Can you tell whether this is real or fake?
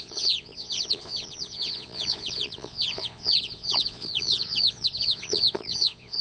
fake